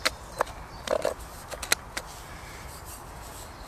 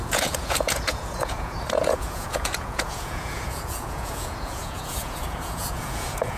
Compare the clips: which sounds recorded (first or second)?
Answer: first